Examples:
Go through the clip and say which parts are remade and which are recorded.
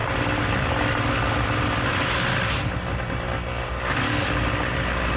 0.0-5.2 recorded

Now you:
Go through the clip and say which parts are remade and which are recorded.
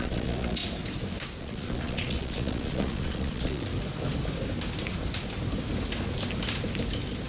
0.0-0.6 remade; 0.6-1.4 recorded; 1.4-3.7 remade; 3.7-7.3 recorded